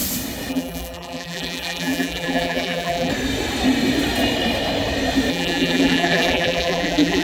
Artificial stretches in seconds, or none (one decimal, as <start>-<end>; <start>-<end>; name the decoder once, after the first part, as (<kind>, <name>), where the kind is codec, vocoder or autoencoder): 0.5-3.1 (vocoder, BigVGAN v2); 5.3-7.2